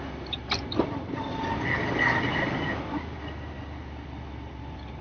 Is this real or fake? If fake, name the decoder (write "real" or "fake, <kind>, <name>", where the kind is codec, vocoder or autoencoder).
real